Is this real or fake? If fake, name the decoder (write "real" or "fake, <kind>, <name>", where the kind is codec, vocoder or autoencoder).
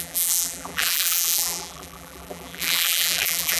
fake, vocoder, BigVGAN v2